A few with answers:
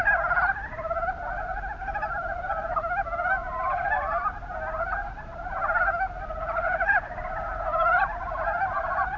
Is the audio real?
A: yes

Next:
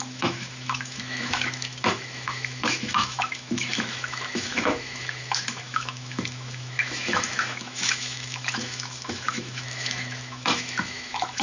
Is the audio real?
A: no